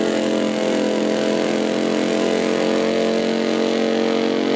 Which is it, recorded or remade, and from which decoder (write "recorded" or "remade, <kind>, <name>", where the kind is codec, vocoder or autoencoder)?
recorded